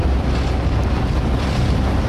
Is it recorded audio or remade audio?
remade